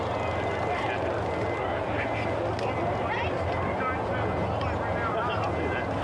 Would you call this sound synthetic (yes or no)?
no